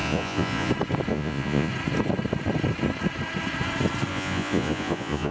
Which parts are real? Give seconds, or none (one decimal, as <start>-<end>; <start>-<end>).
0.7-1.1; 1.7-4.1